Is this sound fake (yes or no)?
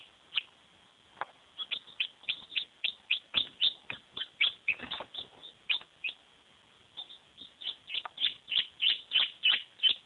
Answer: no